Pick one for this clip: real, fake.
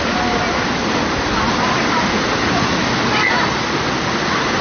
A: real